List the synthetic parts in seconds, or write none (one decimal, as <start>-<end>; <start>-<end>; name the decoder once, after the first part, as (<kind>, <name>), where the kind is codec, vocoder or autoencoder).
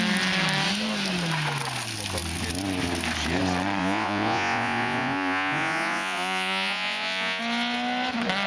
3.8-7.4 (vocoder, Vocos)